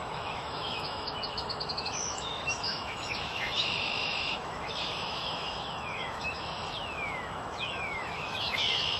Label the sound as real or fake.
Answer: fake